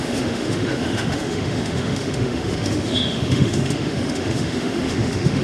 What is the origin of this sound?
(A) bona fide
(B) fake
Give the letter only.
B